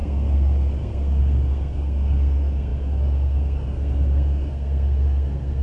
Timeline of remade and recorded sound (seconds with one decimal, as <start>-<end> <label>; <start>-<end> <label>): 0.0-5.6 remade